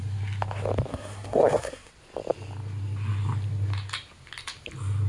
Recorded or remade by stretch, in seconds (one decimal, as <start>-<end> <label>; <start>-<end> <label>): 0.0-0.9 recorded; 0.9-1.9 remade; 1.9-5.1 recorded